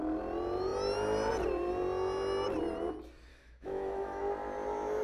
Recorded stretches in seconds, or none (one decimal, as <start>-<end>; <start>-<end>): 0.0-3.3; 4.2-5.0